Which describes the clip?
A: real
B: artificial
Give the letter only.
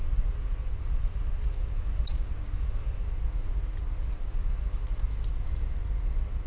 A